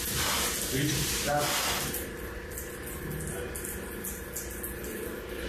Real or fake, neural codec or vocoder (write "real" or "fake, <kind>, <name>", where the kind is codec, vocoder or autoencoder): real